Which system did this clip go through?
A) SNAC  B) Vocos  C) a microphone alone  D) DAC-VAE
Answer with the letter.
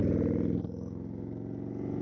C